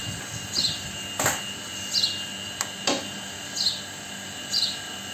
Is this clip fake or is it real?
real